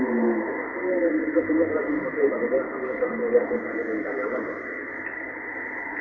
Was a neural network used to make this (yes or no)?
no